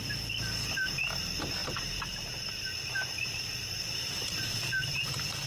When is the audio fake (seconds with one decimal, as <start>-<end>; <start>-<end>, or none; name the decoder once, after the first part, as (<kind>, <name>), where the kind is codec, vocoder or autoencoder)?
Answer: 1.6-4.9 (vocoder, BigVGAN v2)